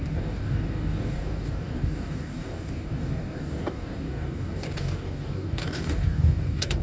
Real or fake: fake